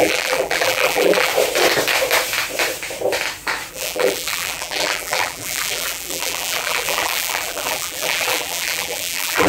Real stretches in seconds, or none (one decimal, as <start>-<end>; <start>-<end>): 1.3-3.7